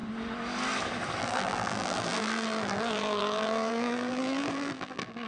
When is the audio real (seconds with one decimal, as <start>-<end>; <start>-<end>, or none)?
0.0-1.2